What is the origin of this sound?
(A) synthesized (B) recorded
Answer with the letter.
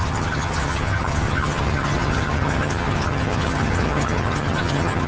A